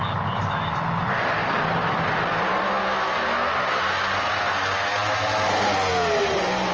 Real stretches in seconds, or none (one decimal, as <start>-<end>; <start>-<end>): 0.0-1.4; 2.2-6.7